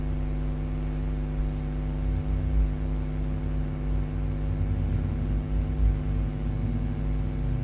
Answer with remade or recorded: recorded